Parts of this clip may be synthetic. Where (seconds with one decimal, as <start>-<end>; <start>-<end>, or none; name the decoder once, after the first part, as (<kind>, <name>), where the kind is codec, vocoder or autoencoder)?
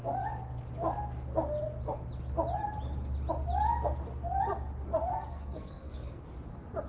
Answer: 5.0-6.2 (codec, SNAC)